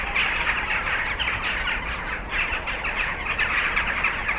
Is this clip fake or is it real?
real